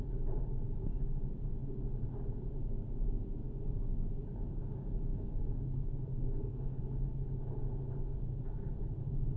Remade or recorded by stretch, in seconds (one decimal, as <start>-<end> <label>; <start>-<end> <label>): 0.0-5.1 recorded; 5.1-6.8 remade; 6.8-9.4 recorded